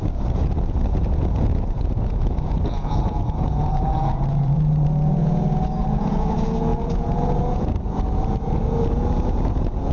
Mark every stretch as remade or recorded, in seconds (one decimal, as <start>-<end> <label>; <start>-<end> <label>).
0.0-9.9 remade